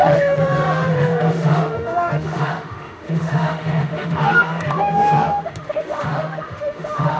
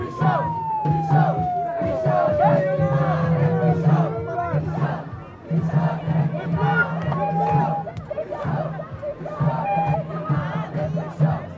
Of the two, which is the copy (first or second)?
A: first